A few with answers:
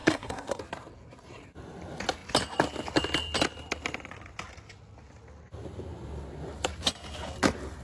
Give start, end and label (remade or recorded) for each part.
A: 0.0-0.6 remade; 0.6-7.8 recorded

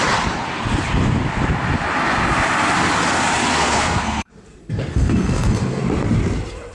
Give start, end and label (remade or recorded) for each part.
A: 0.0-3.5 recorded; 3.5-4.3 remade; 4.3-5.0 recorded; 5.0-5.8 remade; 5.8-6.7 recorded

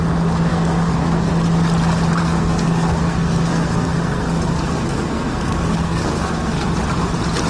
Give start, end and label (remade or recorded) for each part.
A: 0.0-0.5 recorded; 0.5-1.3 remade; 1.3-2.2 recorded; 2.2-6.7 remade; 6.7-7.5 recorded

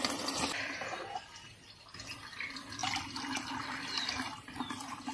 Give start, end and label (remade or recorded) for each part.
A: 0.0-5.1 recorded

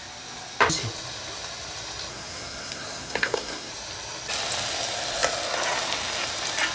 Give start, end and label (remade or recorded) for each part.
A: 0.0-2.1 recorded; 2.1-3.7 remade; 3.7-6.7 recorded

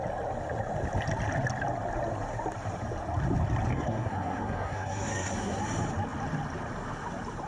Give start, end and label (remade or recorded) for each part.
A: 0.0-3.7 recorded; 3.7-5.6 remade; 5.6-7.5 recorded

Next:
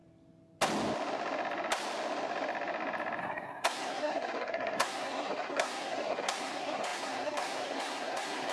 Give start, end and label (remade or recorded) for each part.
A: 0.0-3.2 recorded; 3.2-8.5 remade

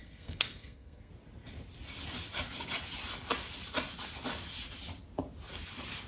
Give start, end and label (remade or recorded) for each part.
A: 0.0-1.1 remade; 1.1-6.1 recorded